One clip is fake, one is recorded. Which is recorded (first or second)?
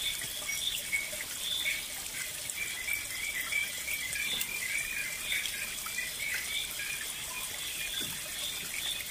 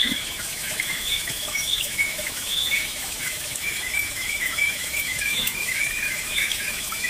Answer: first